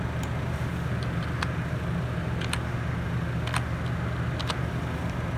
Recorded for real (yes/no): yes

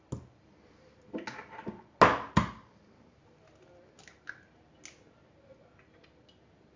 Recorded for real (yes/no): yes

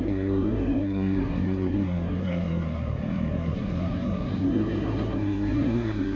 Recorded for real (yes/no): no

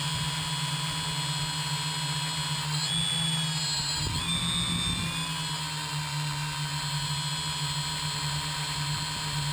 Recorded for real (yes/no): yes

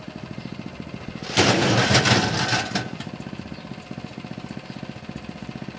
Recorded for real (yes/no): yes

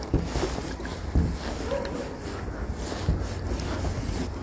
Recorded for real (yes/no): yes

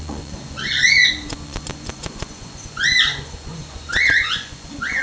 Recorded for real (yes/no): no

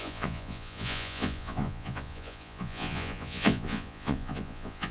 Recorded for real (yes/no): no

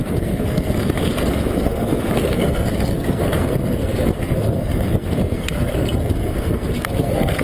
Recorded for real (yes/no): no